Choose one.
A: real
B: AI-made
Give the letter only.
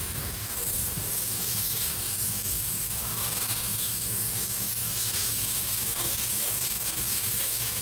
B